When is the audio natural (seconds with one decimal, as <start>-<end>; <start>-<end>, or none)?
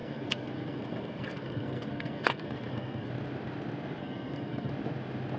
3.1-4.0; 4.7-5.4